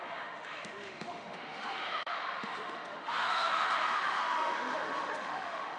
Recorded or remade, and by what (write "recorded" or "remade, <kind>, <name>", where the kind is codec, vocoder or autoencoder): remade, autoencoder, DAC-VAE